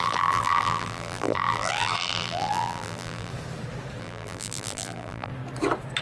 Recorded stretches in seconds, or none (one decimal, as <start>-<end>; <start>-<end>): 3.3-4.0; 5.3-6.0

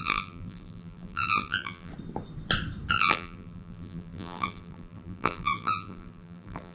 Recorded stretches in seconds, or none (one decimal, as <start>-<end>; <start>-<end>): 1.9-2.9

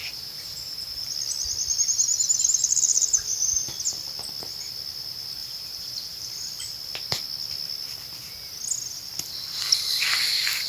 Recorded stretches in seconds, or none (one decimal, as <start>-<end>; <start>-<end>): 1.1-5.4; 6.5-10.7

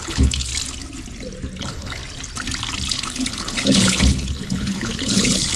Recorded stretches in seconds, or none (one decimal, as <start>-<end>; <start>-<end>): 0.5-1.6; 2.0-2.9

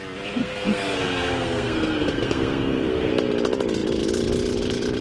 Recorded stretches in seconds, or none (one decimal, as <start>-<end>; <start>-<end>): 0.0-0.4; 3.1-5.0

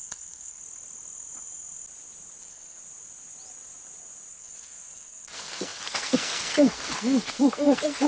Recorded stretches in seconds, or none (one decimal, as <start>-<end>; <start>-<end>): 0.6-2.4; 2.8-4.3

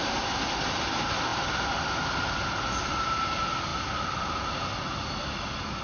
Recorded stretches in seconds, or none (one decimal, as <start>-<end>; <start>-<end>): 0.0-5.8